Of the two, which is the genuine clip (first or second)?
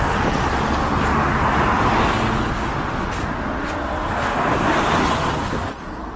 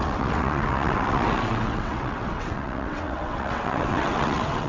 first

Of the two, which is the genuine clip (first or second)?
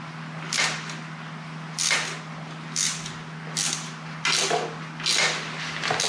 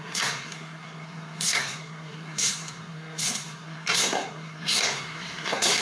first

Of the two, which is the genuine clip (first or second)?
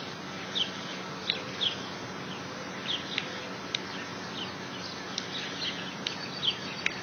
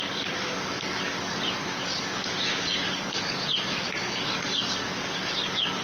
first